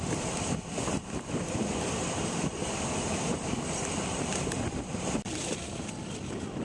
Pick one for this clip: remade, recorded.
remade